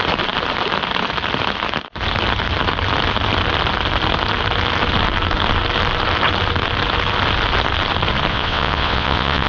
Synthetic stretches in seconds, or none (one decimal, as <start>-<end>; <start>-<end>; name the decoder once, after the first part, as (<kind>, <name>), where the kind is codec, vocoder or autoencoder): 8.3-9.5 (vocoder, WaveNeXt)